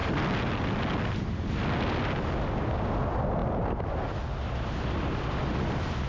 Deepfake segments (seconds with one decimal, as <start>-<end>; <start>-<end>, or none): none